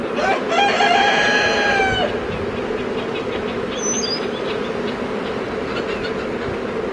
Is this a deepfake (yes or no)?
no